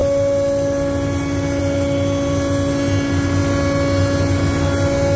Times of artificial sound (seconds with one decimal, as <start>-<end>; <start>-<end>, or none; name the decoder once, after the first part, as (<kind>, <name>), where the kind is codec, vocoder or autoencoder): none

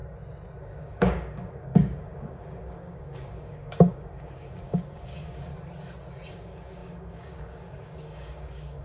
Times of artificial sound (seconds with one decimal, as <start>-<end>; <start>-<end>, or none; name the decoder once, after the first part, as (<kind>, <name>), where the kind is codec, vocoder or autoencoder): 0.6-5.5 (codec, DAC); 6.3-8.8